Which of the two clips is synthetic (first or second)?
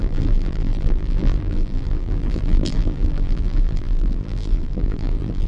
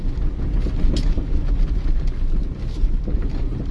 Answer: first